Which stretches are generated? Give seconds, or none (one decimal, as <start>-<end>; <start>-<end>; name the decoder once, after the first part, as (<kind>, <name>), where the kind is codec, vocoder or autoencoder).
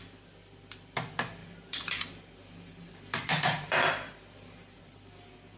1.4-4.8 (vocoder, BigVGAN v2)